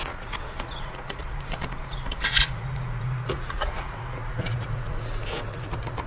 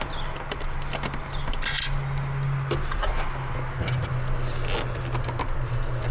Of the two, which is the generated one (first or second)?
first